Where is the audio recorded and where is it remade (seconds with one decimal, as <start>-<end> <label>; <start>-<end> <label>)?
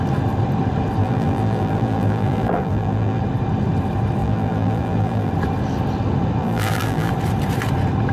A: 0.0-1.0 recorded; 1.0-3.2 remade; 3.2-4.2 recorded; 4.2-5.3 remade; 5.3-6.4 recorded; 6.4-7.1 remade; 7.1-8.1 recorded